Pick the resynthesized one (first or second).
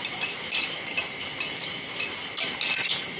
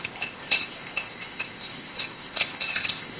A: second